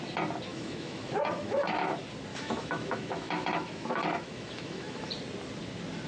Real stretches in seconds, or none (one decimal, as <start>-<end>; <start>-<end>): 0.0-0.5; 1.9-2.3; 5.1-6.1